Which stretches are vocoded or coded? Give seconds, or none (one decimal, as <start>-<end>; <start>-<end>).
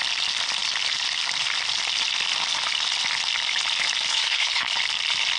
4.1-4.7